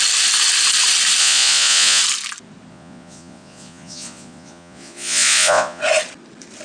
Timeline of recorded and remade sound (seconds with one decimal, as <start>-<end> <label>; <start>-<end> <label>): 0.0-1.2 recorded; 1.2-2.0 remade; 2.0-2.7 recorded; 2.7-5.8 remade; 5.8-6.6 recorded

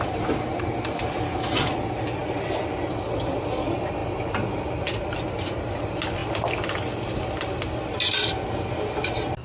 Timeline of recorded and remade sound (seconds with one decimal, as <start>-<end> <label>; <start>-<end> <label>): 0.0-9.4 recorded

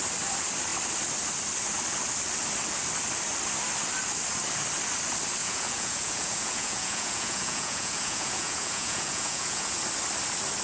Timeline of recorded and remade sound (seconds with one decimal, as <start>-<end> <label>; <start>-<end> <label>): 0.0-5.4 recorded; 5.4-9.8 remade; 9.8-10.6 recorded

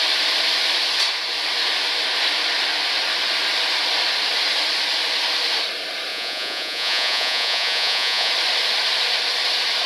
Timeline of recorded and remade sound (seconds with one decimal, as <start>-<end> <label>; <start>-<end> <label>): 0.0-6.1 recorded; 6.1-8.3 remade; 8.3-9.9 recorded

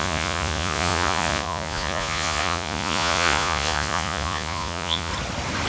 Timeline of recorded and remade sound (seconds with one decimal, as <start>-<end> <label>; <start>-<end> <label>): 0.0-5.1 remade; 5.1-5.7 recorded

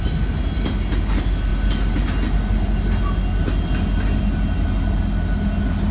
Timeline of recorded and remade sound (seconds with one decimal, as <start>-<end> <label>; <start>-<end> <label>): 0.0-5.9 recorded

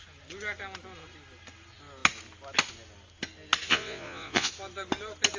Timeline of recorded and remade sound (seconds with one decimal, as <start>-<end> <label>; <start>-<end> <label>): 0.0-3.7 recorded; 3.7-4.5 remade; 4.5-5.4 recorded